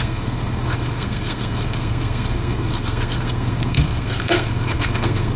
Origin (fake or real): fake